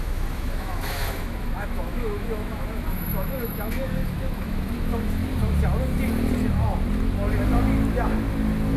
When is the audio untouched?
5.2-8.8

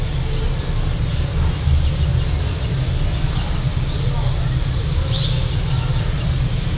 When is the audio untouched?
0.0-6.8

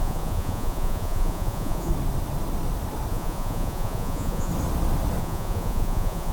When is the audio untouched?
1.9-3.1; 4.5-5.2

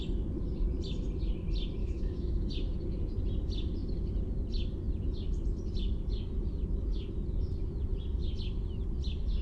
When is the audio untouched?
0.0-1.8; 2.5-9.4